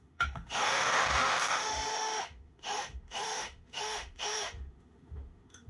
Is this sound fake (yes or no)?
yes